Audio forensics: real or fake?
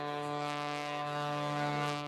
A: fake